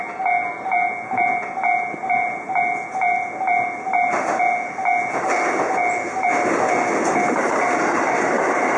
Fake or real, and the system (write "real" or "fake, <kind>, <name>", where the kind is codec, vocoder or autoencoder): real